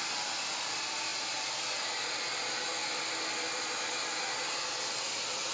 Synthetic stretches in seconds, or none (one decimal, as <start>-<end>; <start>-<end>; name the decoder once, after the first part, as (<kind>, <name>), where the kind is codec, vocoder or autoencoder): none